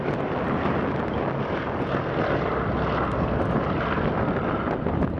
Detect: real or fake real